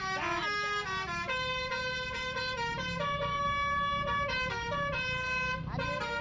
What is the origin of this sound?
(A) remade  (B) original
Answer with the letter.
B